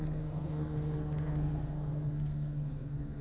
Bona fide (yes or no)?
no